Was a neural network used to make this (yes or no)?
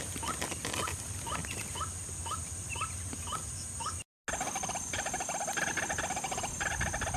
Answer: no